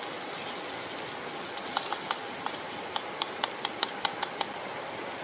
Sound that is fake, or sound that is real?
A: real